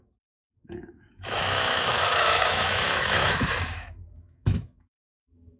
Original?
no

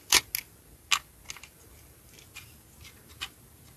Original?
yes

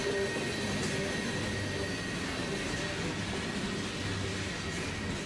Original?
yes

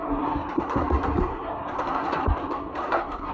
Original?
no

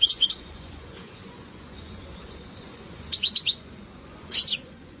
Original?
no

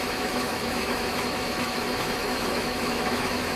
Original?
no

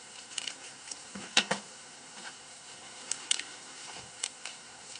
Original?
no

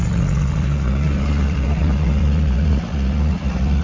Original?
no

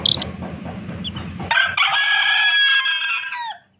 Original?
yes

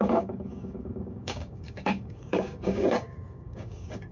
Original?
no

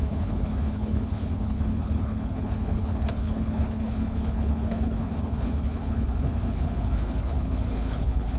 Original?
no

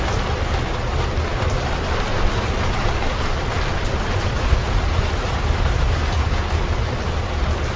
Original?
yes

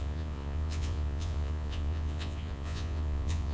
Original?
no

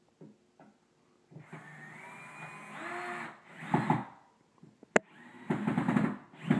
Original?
yes